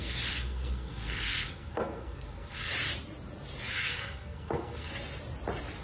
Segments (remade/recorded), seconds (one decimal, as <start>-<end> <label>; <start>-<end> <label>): 0.0-2.7 remade; 2.7-3.7 recorded; 3.7-4.9 remade; 4.9-5.8 recorded